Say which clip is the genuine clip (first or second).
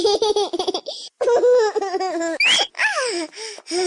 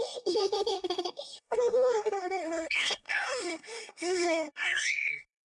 first